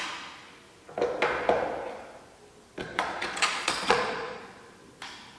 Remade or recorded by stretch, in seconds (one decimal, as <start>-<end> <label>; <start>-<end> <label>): 0.0-2.8 recorded; 2.8-4.4 remade; 4.4-5.4 recorded